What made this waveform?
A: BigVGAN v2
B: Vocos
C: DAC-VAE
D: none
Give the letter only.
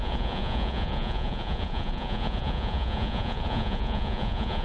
B